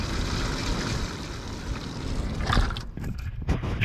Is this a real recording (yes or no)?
yes